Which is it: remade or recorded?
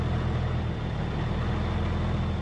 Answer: recorded